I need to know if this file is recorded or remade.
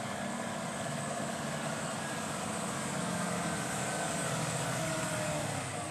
remade